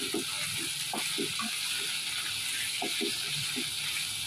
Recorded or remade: recorded